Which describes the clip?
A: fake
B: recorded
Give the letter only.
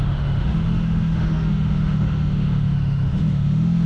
A